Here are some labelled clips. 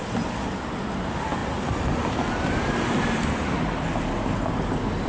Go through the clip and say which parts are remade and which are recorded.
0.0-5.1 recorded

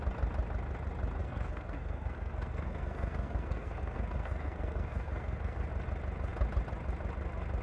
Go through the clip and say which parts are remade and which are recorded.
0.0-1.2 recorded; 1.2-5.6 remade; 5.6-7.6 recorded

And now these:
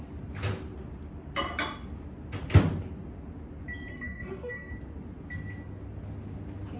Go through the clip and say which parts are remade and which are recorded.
0.0-3.9 recorded; 3.9-4.7 remade; 4.7-6.8 recorded

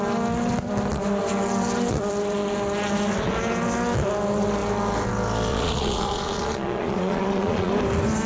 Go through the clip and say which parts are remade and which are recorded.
0.0-5.5 recorded; 5.5-7.7 remade; 7.7-8.3 recorded